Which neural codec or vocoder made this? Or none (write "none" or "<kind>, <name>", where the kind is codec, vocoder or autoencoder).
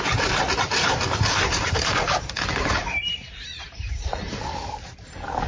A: vocoder, BigVGAN v2